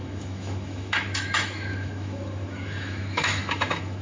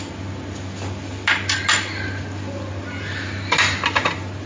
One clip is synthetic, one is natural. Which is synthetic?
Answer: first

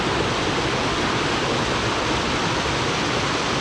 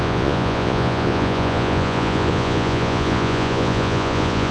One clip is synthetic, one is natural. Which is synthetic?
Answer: second